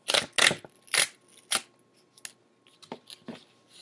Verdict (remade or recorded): recorded